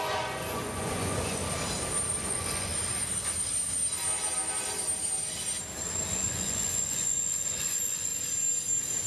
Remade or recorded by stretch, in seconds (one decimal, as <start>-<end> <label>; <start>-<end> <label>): 0.0-1.4 remade; 1.4-2.3 recorded; 2.3-2.7 remade; 2.7-6.1 recorded; 6.1-8.1 remade; 8.1-9.1 recorded